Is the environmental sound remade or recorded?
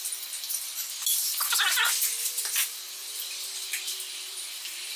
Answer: recorded